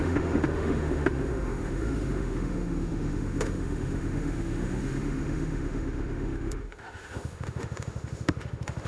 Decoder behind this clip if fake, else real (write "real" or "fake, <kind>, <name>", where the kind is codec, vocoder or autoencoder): fake, autoencoder, DAC-VAE